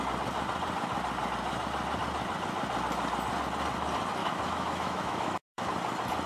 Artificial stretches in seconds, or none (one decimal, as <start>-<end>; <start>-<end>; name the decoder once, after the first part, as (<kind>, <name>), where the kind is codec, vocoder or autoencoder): 4.2-5.7 (autoencoder, DAC-VAE)

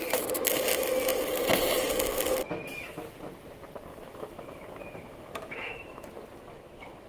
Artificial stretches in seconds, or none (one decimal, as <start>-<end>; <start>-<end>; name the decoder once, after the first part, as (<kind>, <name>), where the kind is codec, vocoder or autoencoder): 3.9-7.1 (autoencoder, DAC-VAE)

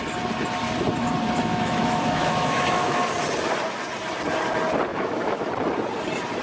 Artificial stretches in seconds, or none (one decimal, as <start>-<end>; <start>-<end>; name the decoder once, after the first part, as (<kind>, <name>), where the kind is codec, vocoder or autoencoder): 1.5-3.0 (autoencoder, DAC-VAE); 4.9-5.5

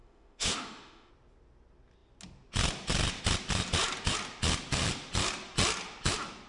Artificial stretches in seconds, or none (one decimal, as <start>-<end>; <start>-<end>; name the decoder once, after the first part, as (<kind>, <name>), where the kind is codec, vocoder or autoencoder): 0.0-1.1 (autoencoder, DAC-VAE)

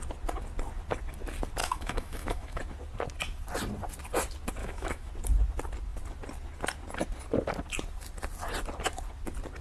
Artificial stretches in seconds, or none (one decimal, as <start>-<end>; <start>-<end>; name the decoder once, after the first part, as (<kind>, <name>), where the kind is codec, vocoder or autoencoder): 1.6-2.6 (autoencoder, DAC-VAE); 4.6-5.1